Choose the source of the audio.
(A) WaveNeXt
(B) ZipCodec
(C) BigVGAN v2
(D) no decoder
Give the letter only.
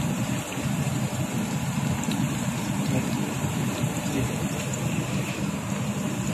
C